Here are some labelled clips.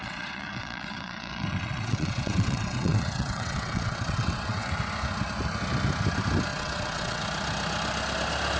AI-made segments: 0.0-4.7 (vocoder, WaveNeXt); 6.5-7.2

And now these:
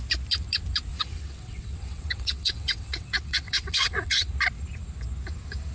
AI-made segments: 0.9-4.3 (vocoder, WaveNeXt)

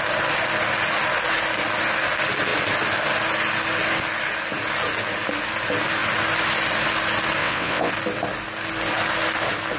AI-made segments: 7.4-7.9 (vocoder, WaveNeXt)